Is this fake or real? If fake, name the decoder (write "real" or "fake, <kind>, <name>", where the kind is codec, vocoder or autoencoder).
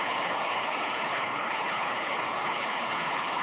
fake, codec, HILCodec